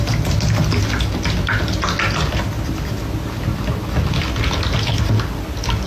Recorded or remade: recorded